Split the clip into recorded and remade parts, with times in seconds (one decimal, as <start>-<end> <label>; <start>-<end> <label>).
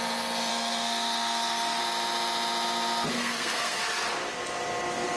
0.0-0.5 recorded; 0.5-1.8 remade; 1.8-3.1 recorded; 3.1-3.8 remade; 3.8-5.2 recorded